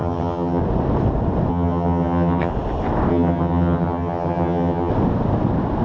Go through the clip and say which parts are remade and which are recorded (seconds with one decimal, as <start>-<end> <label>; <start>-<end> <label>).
0.0-0.6 remade; 0.6-1.5 recorded; 1.5-2.5 remade; 2.5-3.1 recorded; 3.1-4.9 remade; 4.9-5.8 recorded